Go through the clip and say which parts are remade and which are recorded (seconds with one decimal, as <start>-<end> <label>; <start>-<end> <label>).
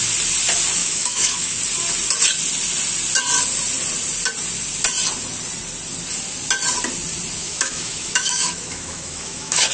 0.0-0.8 recorded; 0.8-1.6 remade; 1.6-7.4 recorded; 7.4-9.7 remade